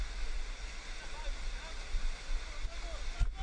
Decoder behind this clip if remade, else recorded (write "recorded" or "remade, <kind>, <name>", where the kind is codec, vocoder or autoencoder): recorded